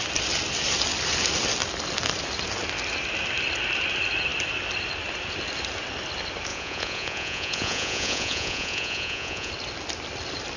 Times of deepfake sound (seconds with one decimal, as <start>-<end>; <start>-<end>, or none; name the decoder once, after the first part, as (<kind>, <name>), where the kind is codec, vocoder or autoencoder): 6.5-9.5 (vocoder, Vocos)